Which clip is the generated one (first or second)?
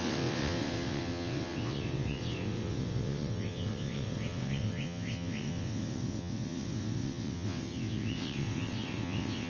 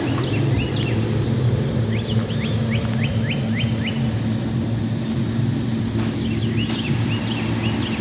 first